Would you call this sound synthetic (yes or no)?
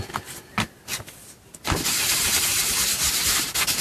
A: no